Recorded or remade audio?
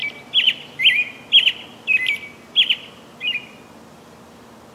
recorded